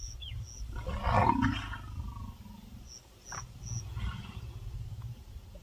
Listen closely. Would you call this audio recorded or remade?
recorded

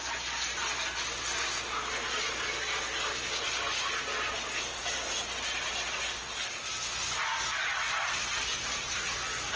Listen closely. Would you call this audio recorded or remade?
recorded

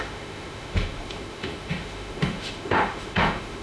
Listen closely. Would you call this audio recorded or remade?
remade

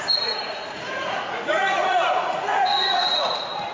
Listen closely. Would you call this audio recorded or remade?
remade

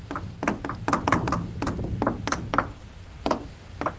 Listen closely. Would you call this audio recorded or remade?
recorded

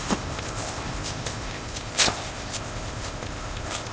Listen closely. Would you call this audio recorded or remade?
remade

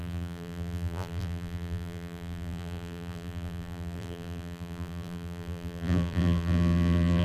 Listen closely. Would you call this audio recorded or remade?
remade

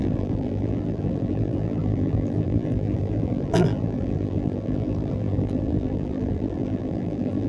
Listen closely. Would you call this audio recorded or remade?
remade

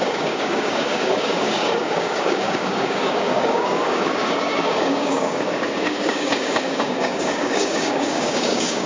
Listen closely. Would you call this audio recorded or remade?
remade